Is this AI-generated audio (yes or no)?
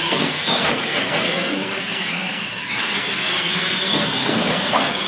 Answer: yes